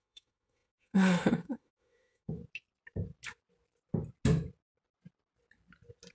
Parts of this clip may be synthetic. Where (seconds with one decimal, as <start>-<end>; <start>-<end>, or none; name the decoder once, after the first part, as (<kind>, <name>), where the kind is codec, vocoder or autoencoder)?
0.0-2.4 (autoencoder, DAC-VAE)